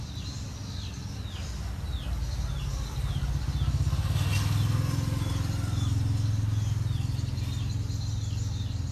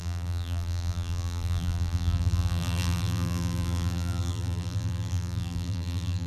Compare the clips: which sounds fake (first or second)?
second